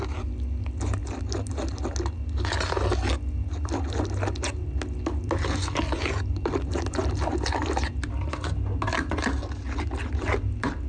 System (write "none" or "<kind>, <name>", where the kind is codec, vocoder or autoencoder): none